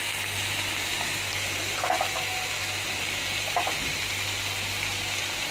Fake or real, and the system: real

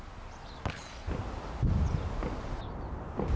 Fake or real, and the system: real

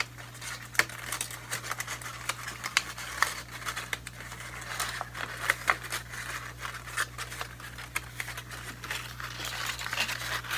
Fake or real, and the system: real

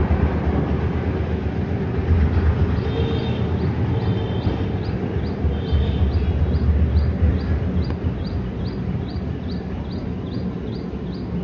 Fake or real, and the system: real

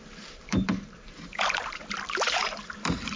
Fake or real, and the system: fake, vocoder, BigVGAN v2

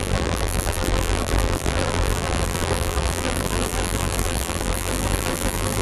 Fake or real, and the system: fake, vocoder, BigVGAN v2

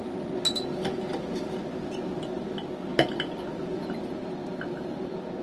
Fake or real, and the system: real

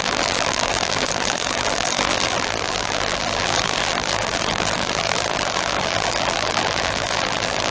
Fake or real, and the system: fake, vocoder, BigVGAN v2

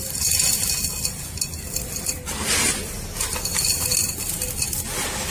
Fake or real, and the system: real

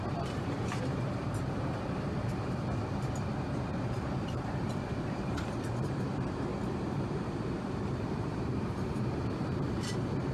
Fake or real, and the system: fake, vocoder, BigVGAN v2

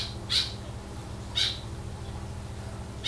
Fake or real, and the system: fake, vocoder, BigVGAN v2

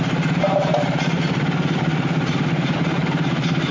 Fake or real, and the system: fake, vocoder, BigVGAN v2